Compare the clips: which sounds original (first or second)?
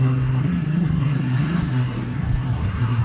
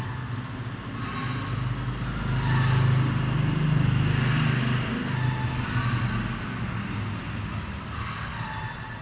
second